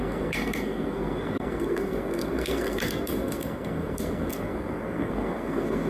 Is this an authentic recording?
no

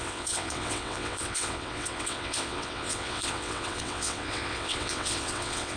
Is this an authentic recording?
no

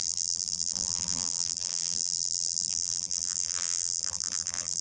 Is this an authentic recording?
no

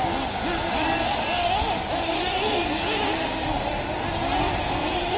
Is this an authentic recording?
yes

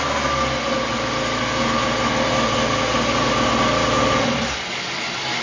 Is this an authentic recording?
yes